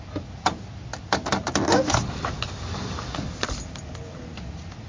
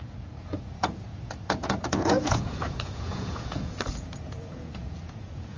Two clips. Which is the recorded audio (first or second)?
first